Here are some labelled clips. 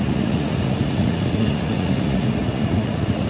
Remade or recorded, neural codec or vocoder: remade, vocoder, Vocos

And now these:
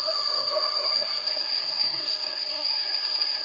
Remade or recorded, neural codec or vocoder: remade, codec, SNAC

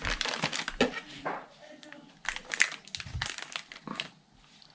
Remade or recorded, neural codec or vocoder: recorded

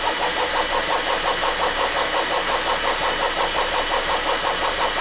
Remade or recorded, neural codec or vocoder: recorded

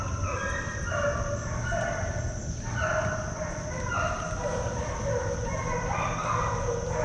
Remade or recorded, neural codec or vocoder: recorded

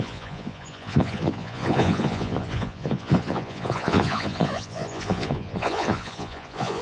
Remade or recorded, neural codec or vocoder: remade, vocoder, Vocos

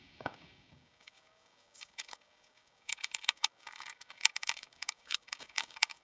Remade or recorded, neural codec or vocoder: remade, codec, DAC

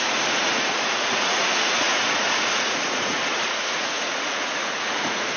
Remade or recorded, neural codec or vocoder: remade, vocoder, Vocos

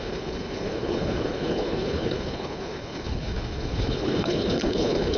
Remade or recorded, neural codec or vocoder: remade, codec, HILCodec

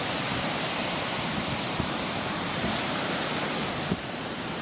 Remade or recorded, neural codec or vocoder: remade, vocoder, BigVGAN v2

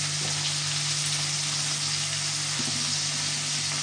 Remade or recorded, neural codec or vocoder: recorded